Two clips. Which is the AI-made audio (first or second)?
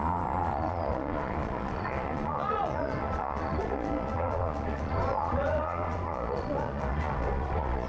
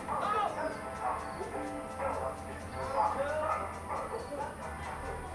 first